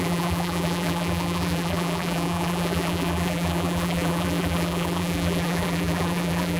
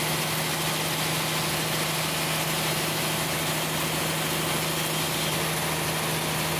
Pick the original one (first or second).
second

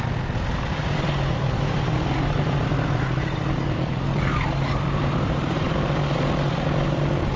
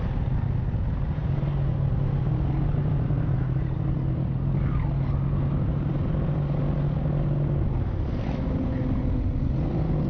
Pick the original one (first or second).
second